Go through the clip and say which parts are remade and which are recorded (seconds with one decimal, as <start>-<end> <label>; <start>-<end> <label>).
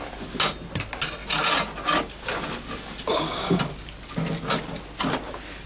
0.0-5.7 recorded